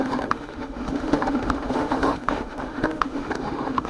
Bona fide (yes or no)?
no